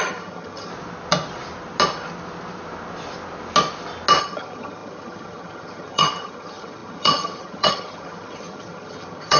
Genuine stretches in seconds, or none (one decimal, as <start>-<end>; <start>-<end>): 0.7-4.2